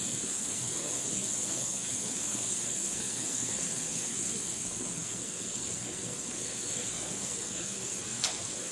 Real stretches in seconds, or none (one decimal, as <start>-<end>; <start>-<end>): none